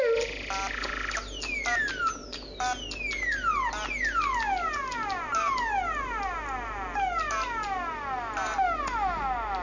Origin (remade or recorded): recorded